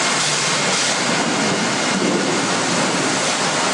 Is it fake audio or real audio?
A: real